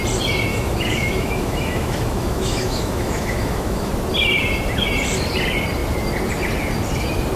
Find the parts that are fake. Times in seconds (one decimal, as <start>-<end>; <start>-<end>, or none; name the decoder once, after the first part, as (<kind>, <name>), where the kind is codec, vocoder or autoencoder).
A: 0.5-3.9 (autoencoder, DAC-VAE)